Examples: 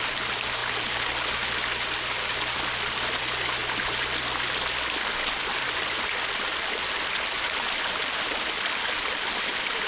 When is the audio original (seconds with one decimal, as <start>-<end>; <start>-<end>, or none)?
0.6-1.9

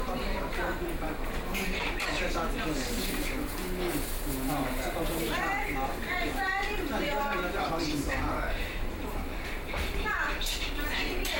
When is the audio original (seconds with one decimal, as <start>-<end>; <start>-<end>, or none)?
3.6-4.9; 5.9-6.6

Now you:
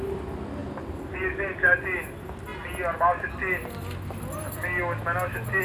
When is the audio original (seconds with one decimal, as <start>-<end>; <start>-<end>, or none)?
0.0-0.6; 1.1-5.6

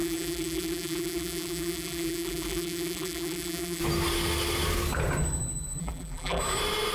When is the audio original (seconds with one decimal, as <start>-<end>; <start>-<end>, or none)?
3.8-5.8; 6.4-6.9

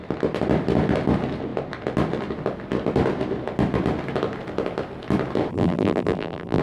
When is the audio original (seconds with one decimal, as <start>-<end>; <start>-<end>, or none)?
0.0-5.5

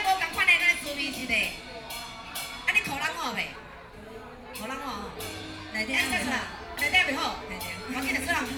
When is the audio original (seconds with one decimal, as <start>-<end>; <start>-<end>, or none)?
0.0-8.6